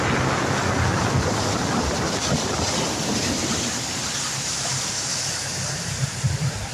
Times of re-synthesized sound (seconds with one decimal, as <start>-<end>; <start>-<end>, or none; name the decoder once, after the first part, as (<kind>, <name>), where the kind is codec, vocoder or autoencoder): 0.9-4.8 (vocoder, BigVGAN v2)